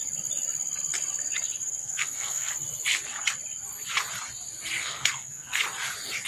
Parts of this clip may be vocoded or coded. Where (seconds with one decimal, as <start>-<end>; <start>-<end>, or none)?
1.8-2.5; 4.8-5.6